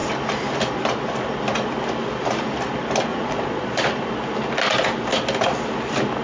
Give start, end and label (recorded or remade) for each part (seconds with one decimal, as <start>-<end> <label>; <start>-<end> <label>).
0.0-3.1 recorded; 3.1-3.9 remade; 3.9-6.2 recorded